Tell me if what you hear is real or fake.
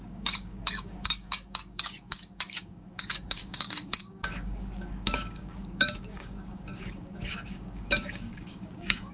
fake